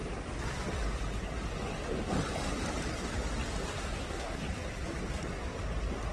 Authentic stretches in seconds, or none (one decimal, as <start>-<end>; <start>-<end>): 0.0-3.8; 4.4-6.1